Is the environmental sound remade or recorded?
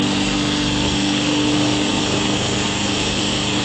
remade